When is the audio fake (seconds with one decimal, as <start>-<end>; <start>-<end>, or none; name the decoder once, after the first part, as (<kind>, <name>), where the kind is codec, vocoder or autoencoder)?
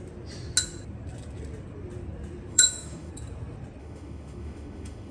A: 2.5-3.1 (autoencoder, DAC-VAE); 3.8-5.1